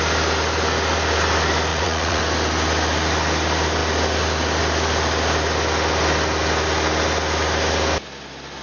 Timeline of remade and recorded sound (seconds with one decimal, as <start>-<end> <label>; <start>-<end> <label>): 0.0-1.7 recorded; 1.7-2.2 remade; 2.2-8.6 recorded